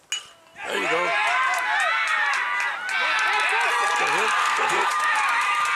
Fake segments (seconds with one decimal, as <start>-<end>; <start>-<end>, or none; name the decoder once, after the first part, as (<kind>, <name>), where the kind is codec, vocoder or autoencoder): 4.4-4.9 (codec, SNAC)